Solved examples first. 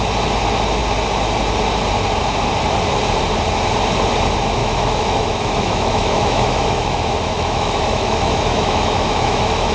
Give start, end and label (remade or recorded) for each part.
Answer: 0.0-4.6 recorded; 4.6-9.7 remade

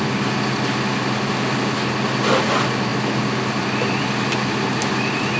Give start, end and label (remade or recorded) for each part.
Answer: 0.0-5.4 recorded

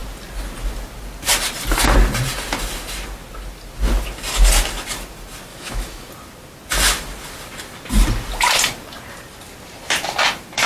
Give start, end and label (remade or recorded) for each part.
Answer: 0.0-5.5 recorded; 5.5-6.1 remade; 6.1-10.7 recorded